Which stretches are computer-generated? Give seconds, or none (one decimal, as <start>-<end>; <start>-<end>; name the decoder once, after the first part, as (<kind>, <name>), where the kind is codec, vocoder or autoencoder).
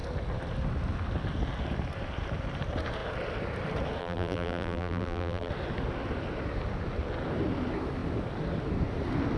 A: 4.0-5.5 (vocoder, BigVGAN v2)